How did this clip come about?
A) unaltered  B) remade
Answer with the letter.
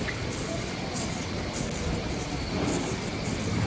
A